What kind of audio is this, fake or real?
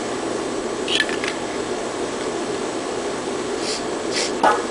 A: real